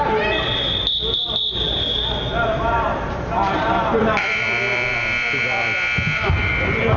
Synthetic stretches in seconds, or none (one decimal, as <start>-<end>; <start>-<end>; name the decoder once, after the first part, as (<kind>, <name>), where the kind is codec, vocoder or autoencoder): 2.3-6.5 (vocoder, BigVGAN v2)